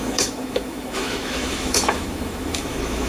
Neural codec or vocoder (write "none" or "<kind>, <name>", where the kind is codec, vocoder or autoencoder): autoencoder, DAC-VAE